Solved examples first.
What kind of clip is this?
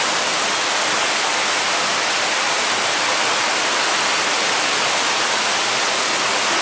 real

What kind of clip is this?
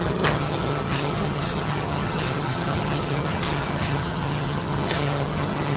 fake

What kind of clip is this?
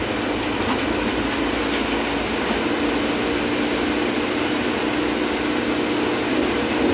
real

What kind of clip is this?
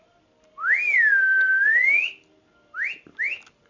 real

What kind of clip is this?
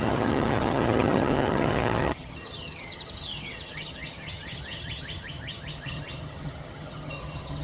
fake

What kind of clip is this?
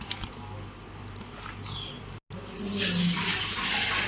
real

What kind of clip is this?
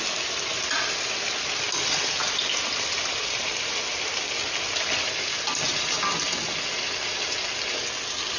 real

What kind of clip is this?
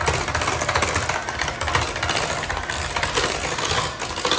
real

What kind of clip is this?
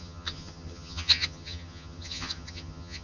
fake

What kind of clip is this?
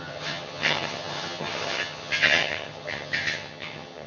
fake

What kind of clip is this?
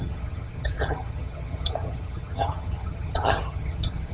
fake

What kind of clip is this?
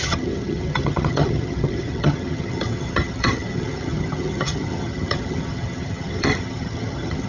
fake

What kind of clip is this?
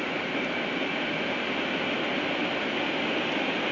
real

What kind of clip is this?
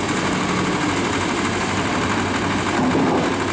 real